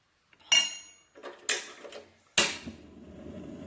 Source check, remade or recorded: recorded